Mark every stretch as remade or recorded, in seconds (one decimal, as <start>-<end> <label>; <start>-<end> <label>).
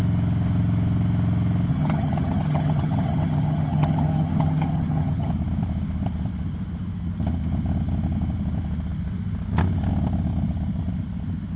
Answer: 0.0-1.7 recorded; 1.7-5.3 remade; 5.3-11.6 recorded